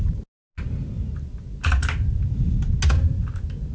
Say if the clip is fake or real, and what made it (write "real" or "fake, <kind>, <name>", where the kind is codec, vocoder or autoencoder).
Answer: real